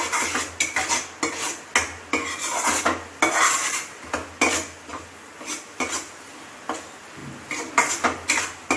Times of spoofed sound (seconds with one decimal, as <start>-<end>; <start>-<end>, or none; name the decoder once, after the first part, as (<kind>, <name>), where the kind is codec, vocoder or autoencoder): none